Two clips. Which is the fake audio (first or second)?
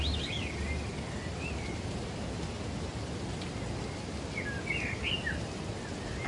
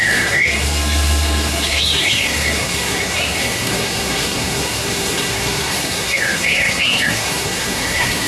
second